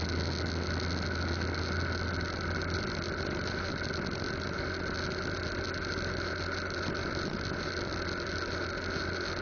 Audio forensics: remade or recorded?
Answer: recorded